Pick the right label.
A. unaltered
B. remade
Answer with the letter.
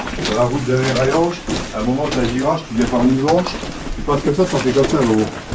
A